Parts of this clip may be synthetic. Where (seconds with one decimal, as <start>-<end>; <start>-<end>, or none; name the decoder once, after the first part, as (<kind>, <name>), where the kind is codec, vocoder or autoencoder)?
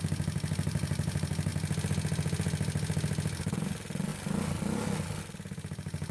0.0-1.5 (vocoder, BigVGAN v2); 3.4-4.1; 5.2-6.1